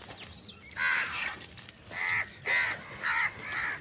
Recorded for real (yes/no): yes